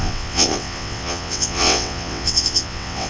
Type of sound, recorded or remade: remade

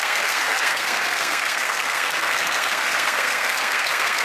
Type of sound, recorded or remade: remade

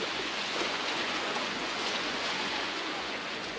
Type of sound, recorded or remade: remade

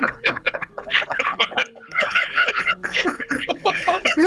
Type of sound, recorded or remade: remade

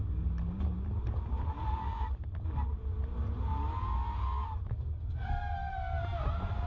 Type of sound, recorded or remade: recorded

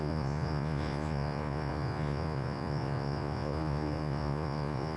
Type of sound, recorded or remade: remade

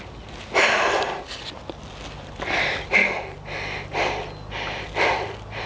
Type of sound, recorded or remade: recorded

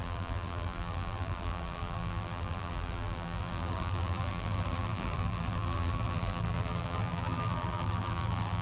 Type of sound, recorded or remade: remade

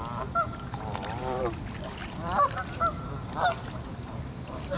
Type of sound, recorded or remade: remade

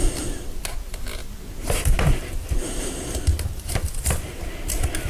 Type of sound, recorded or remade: recorded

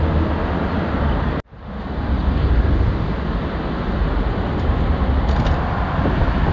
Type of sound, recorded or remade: recorded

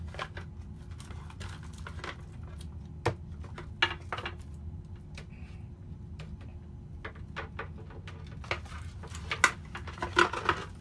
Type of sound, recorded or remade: recorded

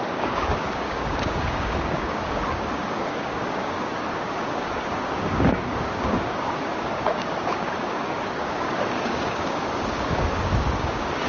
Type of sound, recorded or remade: remade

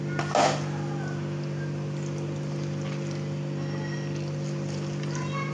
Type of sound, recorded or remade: recorded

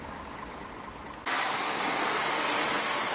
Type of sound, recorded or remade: recorded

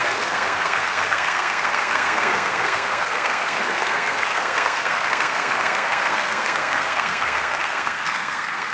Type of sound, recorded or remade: remade